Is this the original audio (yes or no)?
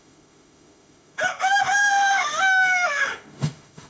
no